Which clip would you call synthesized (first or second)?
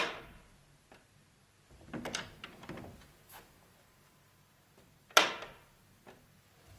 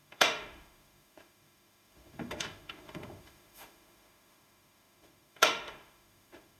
second